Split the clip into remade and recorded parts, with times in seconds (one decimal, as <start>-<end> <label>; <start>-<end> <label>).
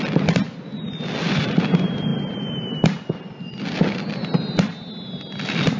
0.0-0.7 recorded; 0.7-1.5 remade; 1.5-5.8 recorded